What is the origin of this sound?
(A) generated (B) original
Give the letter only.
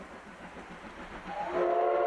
B